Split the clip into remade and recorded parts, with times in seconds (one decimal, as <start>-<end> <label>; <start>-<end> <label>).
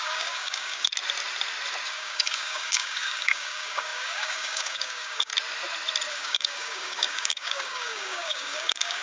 0.0-0.9 remade; 0.9-1.9 recorded; 1.9-5.3 remade; 5.3-6.1 recorded; 6.1-9.0 remade